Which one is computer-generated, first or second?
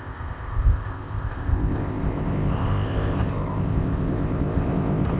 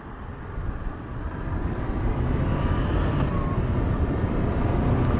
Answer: first